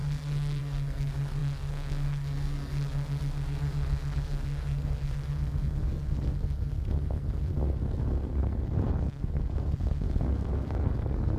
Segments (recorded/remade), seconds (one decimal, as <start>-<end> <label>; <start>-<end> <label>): 0.0-11.4 remade